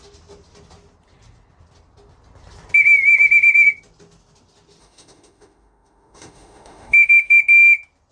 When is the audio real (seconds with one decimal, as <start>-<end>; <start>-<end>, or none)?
0.0-4.8; 7.4-8.1